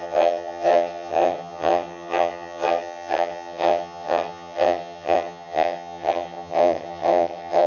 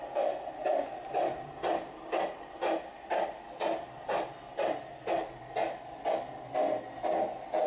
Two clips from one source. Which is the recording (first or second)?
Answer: second